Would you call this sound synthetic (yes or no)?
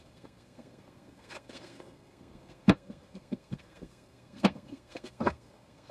yes